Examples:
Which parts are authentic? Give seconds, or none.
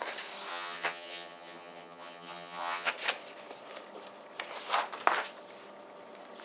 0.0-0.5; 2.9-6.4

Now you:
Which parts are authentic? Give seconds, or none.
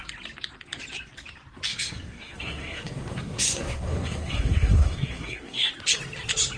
0.0-1.7; 5.7-6.6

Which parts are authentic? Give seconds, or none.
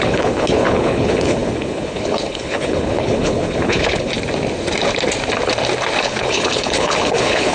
4.1-6.0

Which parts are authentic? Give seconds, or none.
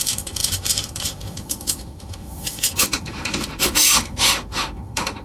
none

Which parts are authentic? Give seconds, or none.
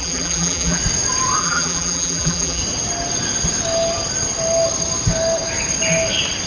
0.8-1.4; 2.6-6.5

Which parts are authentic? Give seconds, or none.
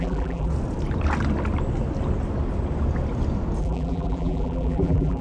0.5-3.6